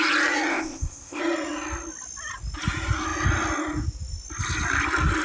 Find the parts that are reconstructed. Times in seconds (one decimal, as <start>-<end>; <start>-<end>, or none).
0.5-1.2

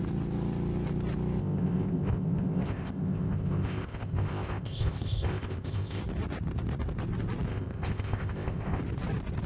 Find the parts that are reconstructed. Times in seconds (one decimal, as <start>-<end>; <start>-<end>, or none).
1.4-6.0; 7.5-8.8